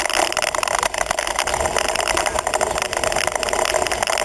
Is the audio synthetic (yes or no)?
no